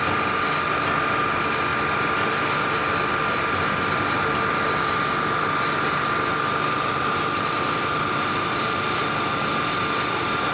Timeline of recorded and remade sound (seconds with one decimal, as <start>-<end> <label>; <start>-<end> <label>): 0.0-10.5 recorded